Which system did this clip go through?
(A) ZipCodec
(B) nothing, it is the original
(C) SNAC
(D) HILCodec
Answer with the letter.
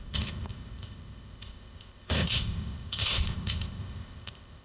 A